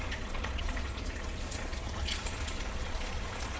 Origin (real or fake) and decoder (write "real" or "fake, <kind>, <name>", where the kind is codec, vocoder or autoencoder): fake, vocoder, Vocos